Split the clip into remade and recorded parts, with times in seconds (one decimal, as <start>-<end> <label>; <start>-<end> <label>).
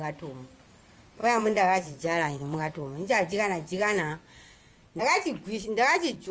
0.0-1.2 recorded; 1.2-5.0 remade; 5.0-6.3 recorded